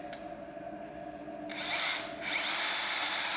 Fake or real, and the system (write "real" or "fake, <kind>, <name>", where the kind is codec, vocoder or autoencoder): real